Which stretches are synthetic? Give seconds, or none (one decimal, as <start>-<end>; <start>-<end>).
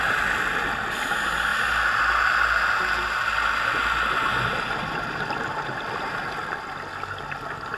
none